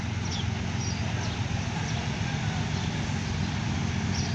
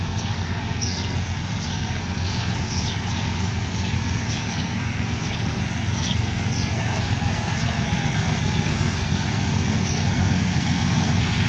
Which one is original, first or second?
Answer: first